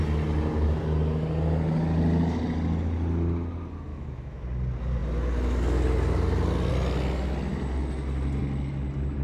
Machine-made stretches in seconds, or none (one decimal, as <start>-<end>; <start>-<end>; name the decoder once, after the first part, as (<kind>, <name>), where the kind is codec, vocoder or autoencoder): 3.9-4.4 (autoencoder, DAC-VAE)